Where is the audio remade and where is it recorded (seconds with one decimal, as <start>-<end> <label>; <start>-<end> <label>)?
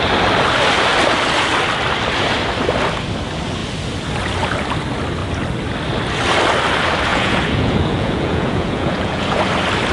0.0-7.1 recorded; 7.1-9.4 remade; 9.4-9.9 recorded